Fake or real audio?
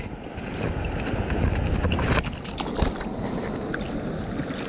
real